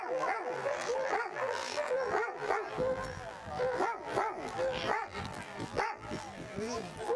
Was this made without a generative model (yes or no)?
no